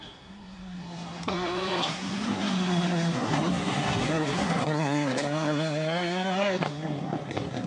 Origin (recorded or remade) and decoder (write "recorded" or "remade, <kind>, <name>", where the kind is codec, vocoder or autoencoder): remade, codec, SNAC